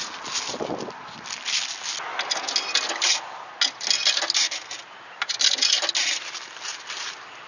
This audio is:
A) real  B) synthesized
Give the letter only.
A